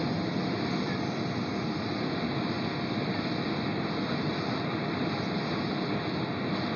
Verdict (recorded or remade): recorded